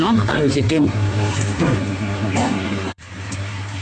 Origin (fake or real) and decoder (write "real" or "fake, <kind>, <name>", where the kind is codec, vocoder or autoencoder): fake, codec, SNAC